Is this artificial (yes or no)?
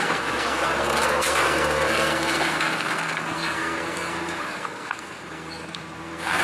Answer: yes